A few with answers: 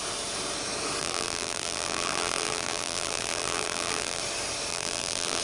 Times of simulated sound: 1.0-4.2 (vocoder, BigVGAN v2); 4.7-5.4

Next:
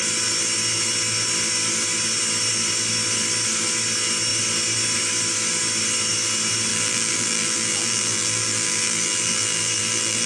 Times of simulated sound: 6.7-10.3 (vocoder, BigVGAN v2)

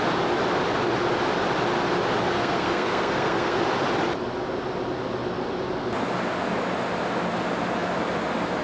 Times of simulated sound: 2.2-3.6 (codec, SNAC)

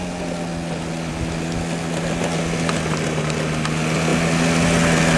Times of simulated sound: none

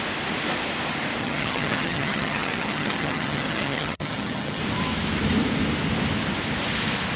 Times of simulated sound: 1.2-4.6 (vocoder, HiFi-GAN)

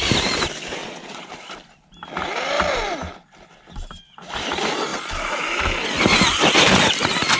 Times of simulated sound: 0.8-1.3 (vocoder, Vocos)

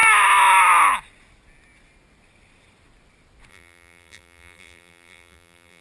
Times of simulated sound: 3.5-5.8 (vocoder, BigVGAN v2)

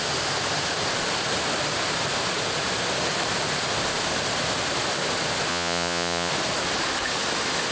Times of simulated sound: 5.5-6.3 (vocoder, Vocos)